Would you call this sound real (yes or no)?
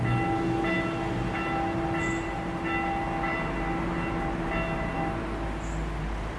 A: yes